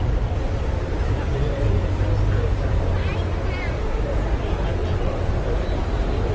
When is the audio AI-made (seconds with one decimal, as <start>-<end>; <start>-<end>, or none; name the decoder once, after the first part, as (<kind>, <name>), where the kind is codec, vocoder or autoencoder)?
4.8-5.3 (vocoder, WaveNeXt)